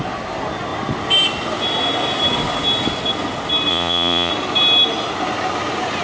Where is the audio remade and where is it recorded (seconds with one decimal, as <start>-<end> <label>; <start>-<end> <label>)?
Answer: 0.0-3.7 recorded; 3.7-4.3 remade; 4.3-6.0 recorded